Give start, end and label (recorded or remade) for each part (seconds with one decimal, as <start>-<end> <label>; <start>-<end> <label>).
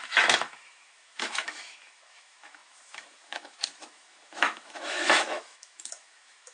0.0-6.5 remade